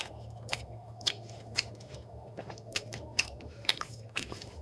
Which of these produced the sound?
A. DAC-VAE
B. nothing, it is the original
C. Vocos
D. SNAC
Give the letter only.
A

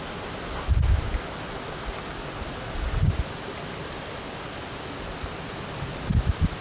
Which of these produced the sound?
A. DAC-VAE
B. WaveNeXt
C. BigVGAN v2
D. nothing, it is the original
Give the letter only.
D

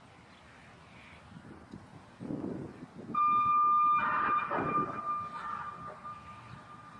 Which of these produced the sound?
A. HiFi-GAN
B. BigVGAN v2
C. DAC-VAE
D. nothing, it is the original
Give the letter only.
D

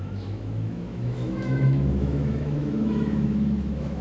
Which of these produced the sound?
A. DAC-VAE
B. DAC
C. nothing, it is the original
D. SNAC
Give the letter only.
A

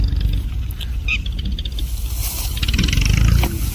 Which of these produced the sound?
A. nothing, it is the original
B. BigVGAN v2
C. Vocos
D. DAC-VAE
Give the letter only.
A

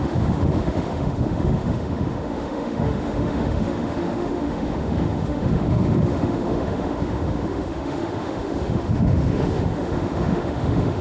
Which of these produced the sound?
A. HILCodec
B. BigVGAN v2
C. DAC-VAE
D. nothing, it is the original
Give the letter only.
C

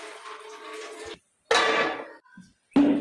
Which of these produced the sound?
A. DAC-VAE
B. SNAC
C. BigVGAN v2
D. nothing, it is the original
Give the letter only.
D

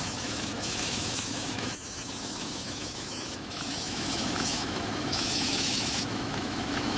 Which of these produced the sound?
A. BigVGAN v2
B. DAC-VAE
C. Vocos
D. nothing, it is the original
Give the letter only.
B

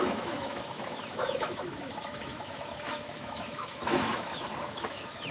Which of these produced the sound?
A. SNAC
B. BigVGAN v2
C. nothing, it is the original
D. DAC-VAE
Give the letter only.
D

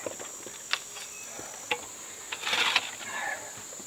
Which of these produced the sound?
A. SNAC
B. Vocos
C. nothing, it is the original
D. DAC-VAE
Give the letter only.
C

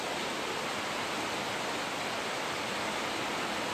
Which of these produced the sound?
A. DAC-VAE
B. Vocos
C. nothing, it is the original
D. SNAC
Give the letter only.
C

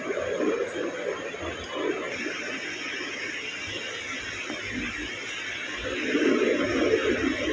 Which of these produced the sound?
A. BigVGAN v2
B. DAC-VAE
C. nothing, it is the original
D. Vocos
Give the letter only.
C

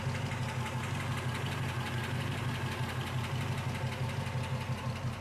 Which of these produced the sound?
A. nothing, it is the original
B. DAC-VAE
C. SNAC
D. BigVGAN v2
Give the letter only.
A